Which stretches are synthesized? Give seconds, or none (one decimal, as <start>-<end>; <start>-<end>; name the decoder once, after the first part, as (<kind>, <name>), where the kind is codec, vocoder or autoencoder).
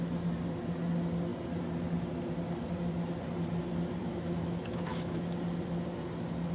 4.0-5.4 (autoencoder, DAC-VAE)